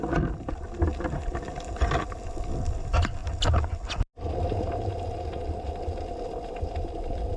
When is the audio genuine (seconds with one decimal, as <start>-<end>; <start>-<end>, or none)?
0.0-7.4